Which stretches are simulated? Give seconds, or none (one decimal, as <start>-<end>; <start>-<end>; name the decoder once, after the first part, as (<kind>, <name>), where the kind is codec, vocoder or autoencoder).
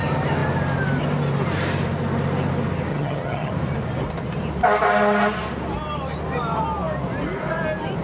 2.9-3.5 (vocoder, HiFi-GAN)